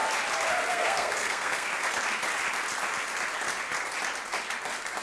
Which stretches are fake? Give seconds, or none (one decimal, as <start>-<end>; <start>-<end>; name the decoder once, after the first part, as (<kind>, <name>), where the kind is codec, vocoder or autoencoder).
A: 0.7-1.7 (codec, SNAC)